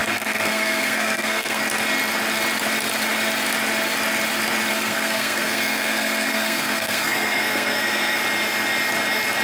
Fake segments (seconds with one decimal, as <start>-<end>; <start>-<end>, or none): 0.0-1.6; 4.7-8.2